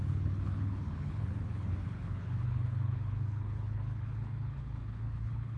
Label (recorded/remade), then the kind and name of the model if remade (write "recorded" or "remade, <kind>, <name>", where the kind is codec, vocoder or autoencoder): remade, codec, HILCodec